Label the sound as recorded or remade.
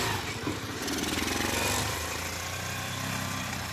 recorded